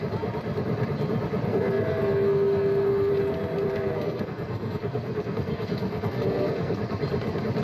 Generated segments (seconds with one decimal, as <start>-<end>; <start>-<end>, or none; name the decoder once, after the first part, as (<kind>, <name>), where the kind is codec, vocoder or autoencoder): 1.5-3.1 (codec, SNAC); 3.7-6.8